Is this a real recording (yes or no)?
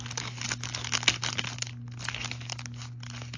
yes